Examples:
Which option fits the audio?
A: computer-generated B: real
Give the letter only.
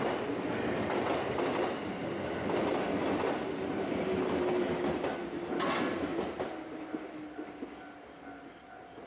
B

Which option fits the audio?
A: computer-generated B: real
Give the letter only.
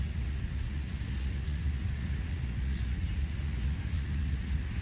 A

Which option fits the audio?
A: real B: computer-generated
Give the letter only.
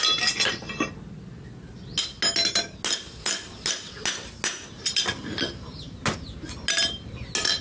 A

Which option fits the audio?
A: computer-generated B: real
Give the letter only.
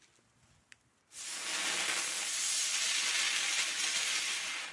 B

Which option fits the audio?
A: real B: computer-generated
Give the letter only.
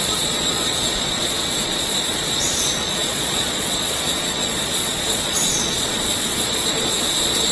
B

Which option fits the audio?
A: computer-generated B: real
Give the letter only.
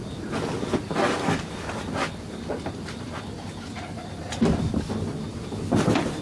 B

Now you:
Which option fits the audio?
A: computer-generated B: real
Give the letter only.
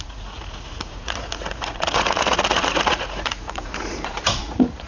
A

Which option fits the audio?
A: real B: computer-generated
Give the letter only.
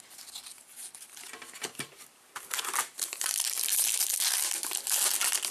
A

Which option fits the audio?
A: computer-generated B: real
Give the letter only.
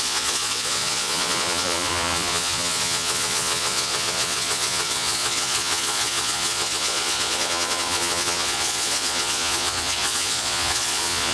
A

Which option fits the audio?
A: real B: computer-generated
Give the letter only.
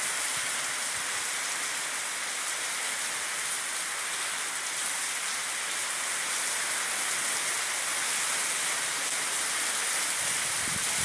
A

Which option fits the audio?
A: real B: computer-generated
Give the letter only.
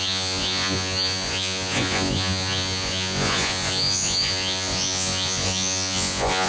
B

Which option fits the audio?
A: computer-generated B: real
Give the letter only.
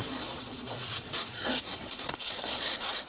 A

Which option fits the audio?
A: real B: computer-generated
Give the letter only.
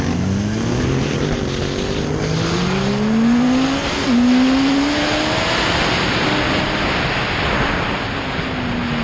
A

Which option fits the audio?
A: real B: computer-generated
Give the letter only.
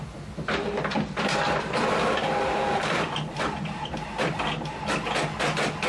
A